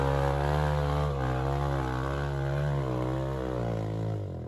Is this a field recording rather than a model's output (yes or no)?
yes